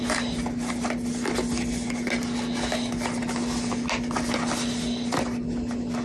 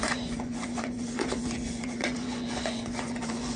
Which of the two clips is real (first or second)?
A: first